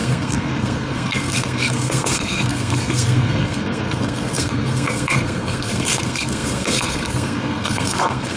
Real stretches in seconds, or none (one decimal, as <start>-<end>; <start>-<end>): none